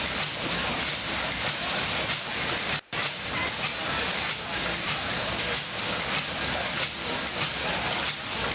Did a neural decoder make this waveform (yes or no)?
no